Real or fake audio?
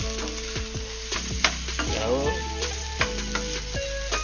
real